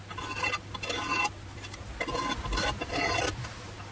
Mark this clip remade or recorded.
recorded